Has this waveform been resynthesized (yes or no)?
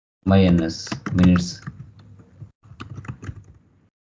no